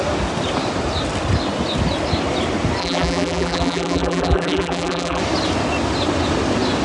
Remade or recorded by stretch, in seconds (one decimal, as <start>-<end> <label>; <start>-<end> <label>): 0.0-2.8 recorded; 2.8-5.2 remade; 5.2-6.8 recorded